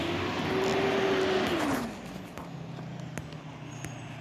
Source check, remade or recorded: recorded